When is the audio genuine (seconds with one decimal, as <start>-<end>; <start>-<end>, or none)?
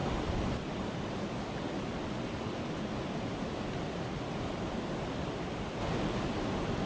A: 1.0-2.5; 3.9-6.9